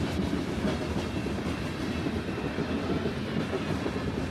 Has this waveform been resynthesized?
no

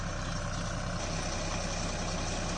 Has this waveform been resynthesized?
no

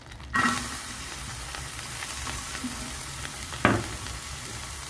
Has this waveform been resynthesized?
yes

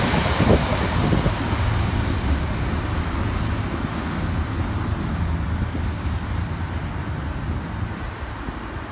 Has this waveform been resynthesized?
no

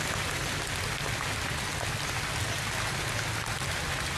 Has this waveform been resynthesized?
no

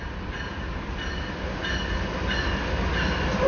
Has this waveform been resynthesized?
no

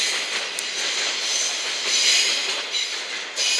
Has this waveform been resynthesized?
no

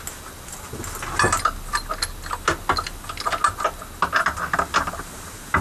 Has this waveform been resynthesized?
no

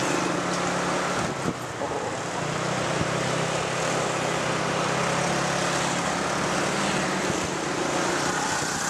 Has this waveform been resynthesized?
no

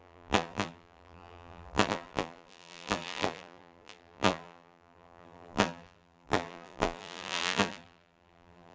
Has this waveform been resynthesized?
yes